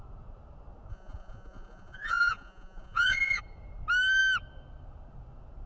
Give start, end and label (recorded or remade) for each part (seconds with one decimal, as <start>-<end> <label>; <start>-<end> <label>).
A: 0.0-0.9 recorded; 0.9-3.4 remade; 3.4-5.7 recorded